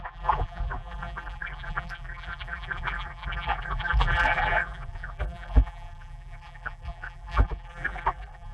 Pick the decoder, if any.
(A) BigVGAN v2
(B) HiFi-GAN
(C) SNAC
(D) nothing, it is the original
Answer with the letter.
A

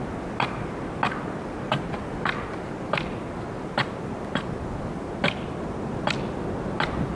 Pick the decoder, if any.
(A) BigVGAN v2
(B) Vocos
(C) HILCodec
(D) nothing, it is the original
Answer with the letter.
D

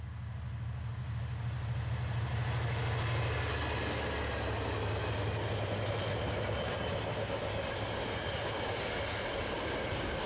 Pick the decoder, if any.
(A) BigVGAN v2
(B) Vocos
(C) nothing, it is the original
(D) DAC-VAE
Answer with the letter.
C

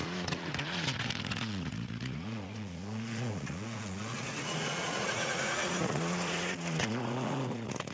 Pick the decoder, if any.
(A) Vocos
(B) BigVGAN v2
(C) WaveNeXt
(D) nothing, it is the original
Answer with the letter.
A